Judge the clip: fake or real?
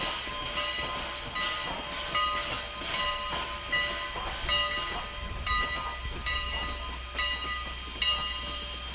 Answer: real